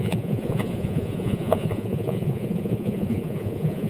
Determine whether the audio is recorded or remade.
remade